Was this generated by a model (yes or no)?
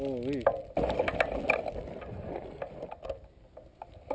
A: no